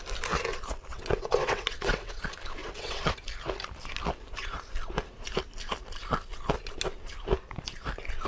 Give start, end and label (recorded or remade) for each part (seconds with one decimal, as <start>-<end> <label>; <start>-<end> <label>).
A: 0.0-0.9 recorded; 0.9-2.2 remade; 2.2-2.6 recorded; 2.6-3.1 remade; 3.1-8.3 recorded